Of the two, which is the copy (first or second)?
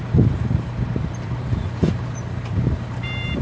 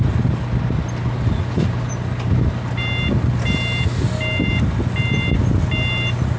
first